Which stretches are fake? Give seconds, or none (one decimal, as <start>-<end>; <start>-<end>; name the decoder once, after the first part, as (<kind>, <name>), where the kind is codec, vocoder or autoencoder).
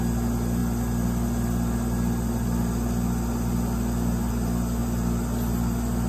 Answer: none